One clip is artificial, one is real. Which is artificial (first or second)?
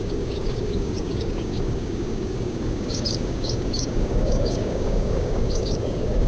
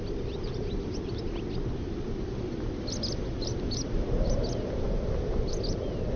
first